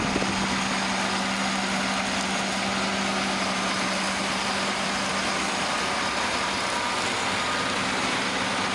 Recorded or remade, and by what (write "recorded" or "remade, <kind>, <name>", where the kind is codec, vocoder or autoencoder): recorded